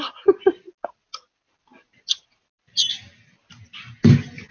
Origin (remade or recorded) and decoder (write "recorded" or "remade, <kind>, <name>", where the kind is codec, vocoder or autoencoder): recorded